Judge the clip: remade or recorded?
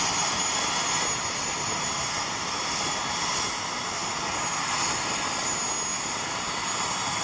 recorded